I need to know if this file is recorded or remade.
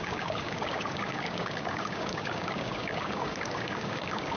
remade